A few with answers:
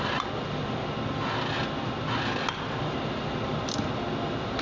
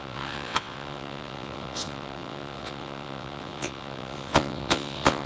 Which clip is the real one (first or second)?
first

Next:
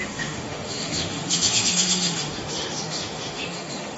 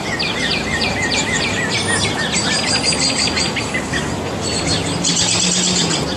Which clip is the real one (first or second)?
second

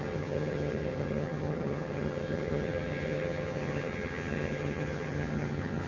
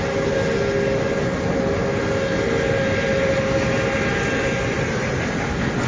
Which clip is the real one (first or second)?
second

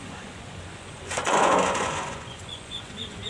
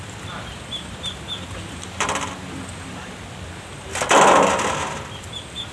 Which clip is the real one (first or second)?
second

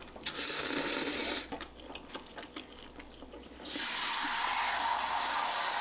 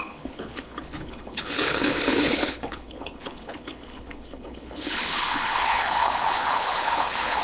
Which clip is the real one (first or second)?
first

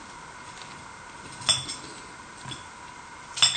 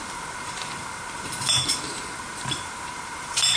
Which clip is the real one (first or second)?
first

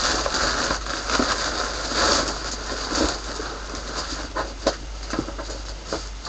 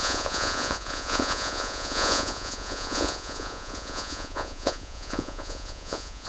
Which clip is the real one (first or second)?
first